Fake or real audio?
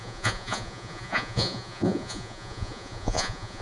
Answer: fake